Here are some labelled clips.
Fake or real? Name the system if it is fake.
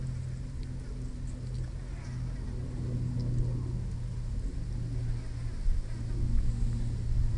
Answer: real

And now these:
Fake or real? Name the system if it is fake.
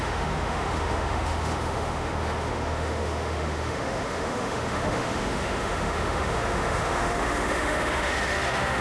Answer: fake, autoencoder, DAC-VAE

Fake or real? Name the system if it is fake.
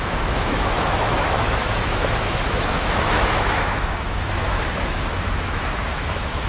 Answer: fake, autoencoder, DAC-VAE